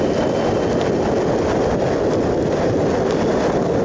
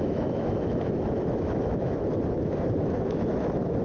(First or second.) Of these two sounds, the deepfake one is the second